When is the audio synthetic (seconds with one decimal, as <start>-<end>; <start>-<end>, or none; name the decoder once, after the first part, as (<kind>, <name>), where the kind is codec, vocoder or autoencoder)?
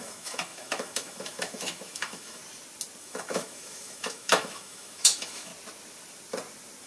0.0-2.4 (autoencoder, DAC-VAE); 3.0-5.5